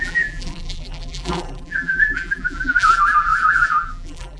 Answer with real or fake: fake